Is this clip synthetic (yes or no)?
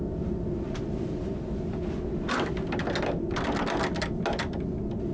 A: no